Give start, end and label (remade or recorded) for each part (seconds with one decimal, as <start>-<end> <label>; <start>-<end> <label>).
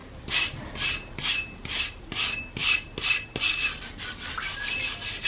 0.0-5.3 remade